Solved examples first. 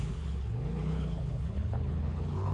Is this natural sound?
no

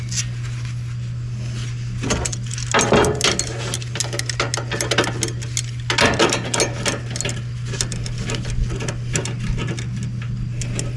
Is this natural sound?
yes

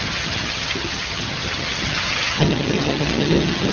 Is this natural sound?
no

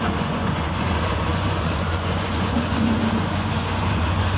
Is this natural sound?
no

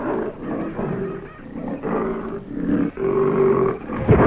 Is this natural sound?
yes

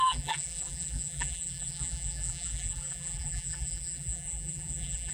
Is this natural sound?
no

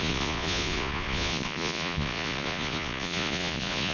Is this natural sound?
no